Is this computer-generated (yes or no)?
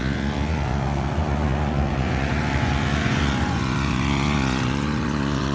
yes